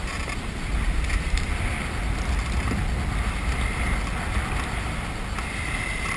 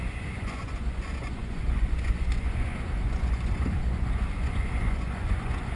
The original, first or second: first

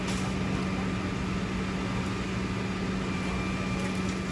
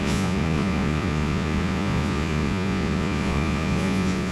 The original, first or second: first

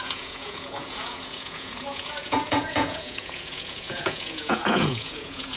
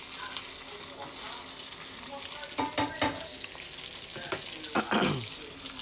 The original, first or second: second